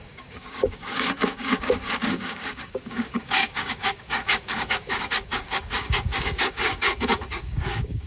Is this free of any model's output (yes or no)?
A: no